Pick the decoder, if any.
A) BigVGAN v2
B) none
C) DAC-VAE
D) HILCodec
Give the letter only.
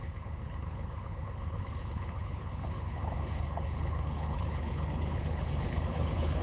D